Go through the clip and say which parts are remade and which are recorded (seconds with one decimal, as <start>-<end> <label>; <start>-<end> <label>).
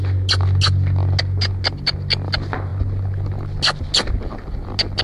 0.0-5.0 recorded